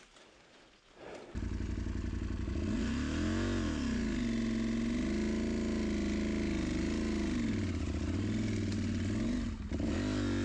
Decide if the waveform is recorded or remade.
recorded